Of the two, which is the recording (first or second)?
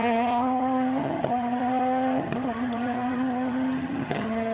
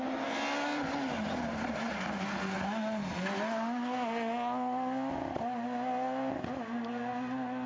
second